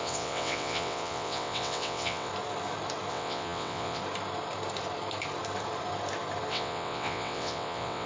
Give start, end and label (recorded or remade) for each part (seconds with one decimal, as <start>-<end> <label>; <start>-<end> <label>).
0.0-2.3 remade; 2.3-3.1 recorded; 3.1-4.0 remade; 4.0-6.5 recorded; 6.5-8.1 remade